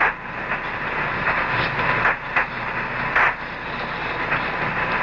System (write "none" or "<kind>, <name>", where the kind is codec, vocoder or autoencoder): none